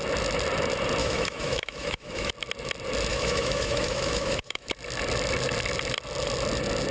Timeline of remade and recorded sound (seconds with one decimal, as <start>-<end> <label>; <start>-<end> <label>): 0.0-1.0 recorded; 1.0-2.3 remade; 2.3-3.1 recorded; 3.1-4.7 remade; 4.7-6.9 recorded